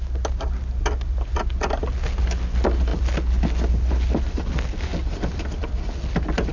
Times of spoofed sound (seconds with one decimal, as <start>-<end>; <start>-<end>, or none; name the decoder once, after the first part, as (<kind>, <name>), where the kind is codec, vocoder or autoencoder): none